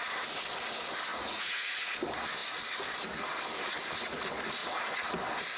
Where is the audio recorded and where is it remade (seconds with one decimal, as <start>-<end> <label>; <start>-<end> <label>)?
0.0-1.1 recorded; 1.1-1.7 remade; 1.7-5.6 recorded